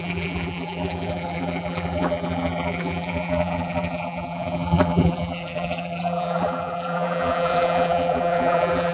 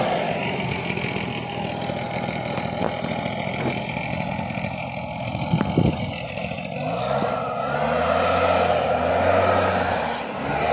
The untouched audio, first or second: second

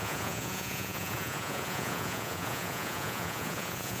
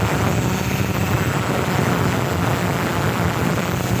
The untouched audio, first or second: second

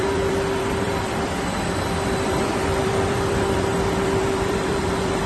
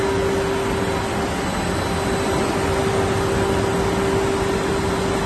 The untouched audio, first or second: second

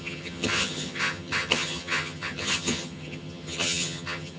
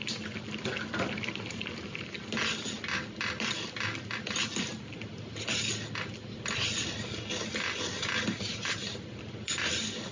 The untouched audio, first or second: second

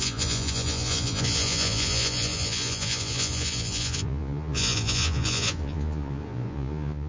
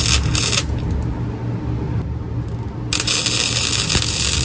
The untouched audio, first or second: second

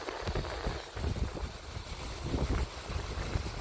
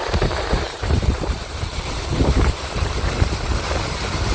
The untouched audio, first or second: first